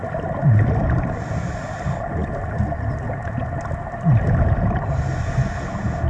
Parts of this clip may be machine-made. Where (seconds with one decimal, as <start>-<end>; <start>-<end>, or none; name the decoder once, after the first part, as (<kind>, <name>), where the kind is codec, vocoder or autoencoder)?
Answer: 0.0-0.8 (vocoder, BigVGAN v2)